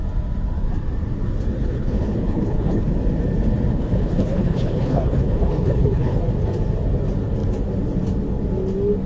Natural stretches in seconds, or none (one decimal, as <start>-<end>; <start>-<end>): 0.0-1.6; 3.0-3.7; 6.2-9.1